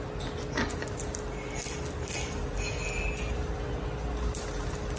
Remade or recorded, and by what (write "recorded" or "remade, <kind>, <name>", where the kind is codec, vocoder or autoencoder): recorded